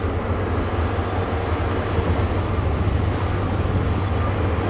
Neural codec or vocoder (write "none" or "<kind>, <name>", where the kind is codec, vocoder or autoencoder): none